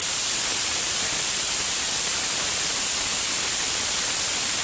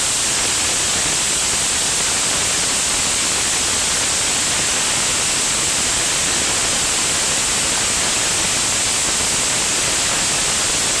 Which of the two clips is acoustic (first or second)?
second